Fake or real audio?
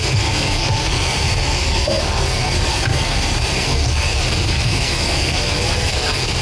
fake